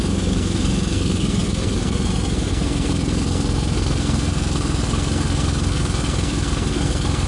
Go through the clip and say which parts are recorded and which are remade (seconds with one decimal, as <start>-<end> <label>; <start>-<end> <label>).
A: 0.0-7.3 remade